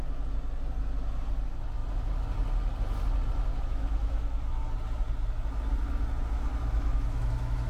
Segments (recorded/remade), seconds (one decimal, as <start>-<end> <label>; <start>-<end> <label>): 0.0-3.7 recorded; 3.7-4.5 remade; 4.5-6.5 recorded; 6.5-7.7 remade